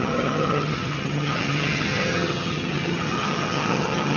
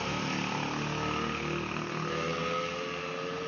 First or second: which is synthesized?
first